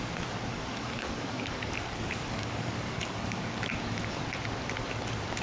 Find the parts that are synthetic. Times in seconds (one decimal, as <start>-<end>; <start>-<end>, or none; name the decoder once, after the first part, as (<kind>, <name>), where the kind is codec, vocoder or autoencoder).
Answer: 0.5-3.7 (codec, DAC)